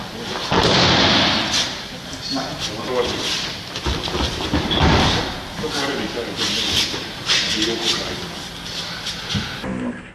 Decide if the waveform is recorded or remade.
recorded